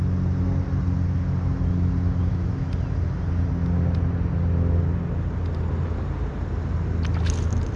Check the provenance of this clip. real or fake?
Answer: real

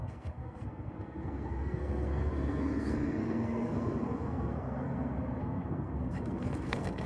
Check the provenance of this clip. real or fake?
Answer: fake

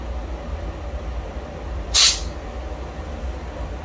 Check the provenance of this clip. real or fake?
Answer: real